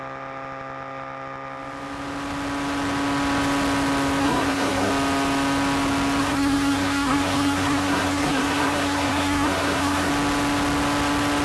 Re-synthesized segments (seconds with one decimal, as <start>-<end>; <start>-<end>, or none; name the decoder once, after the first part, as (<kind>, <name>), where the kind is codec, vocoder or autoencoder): 4.2-4.9 (codec, SNAC); 6.2-10.1